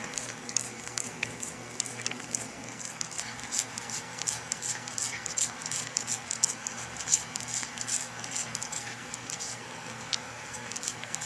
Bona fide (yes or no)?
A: no